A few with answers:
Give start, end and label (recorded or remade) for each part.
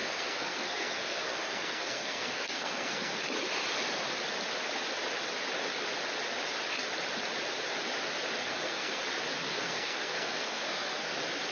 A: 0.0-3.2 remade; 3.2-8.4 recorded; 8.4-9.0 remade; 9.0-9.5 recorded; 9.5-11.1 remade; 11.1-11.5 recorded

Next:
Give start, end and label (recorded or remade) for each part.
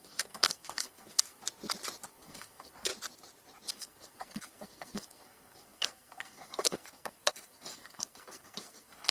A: 0.0-1.4 remade; 1.4-2.1 recorded; 2.1-2.9 remade; 2.9-3.7 recorded; 3.7-9.1 remade